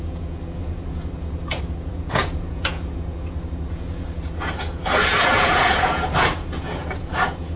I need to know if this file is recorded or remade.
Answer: remade